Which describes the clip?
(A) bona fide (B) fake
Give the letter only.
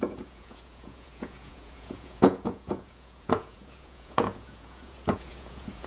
B